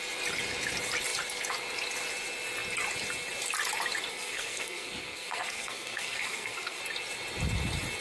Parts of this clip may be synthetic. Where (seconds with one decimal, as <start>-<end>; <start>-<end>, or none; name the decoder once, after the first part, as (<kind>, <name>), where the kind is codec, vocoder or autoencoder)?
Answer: 4.1-6.8 (codec, SNAC)